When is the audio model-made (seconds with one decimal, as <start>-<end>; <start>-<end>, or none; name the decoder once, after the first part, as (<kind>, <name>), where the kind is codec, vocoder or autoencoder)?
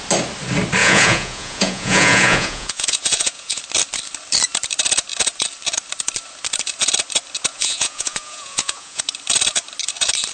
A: 0.8-3.6 (vocoder, Vocos); 7.5-9.0